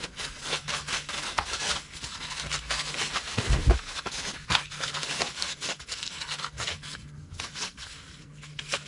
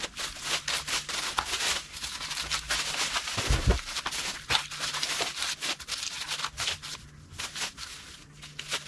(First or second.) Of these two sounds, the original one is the second